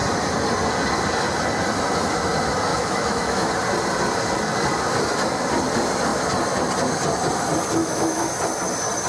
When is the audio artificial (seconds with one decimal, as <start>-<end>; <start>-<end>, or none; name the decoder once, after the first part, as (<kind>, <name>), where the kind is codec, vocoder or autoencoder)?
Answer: 2.7-3.5 (autoencoder, DAC-VAE); 7.8-8.3